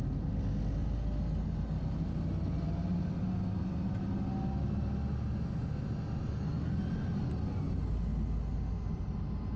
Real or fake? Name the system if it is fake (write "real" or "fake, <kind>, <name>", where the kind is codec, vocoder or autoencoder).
real